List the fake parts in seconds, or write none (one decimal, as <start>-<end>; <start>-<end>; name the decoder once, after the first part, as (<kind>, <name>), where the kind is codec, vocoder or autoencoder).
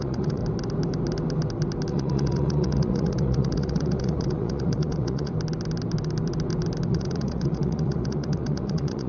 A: 0.0-0.4 (vocoder, Vocos); 1.9-5.3; 6.9-9.1